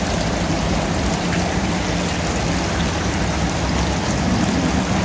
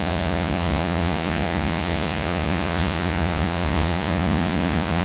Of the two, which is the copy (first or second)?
second